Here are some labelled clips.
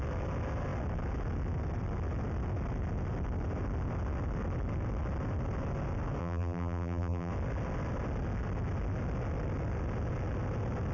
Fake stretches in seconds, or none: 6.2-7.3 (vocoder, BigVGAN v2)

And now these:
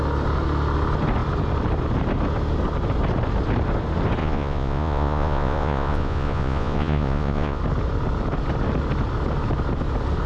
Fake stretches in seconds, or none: 4.2-7.6 (vocoder, Vocos)

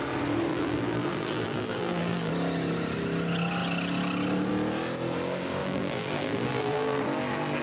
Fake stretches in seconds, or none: 0.5-2.3 (vocoder, BigVGAN v2); 5.6-7.0